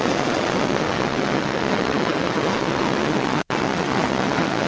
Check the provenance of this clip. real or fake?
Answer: fake